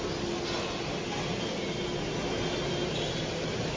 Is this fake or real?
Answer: real